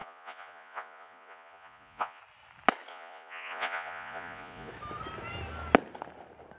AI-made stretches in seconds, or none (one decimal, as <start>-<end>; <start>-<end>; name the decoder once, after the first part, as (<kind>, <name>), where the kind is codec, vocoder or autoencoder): 0.0-2.2 (vocoder, Vocos); 2.9-4.7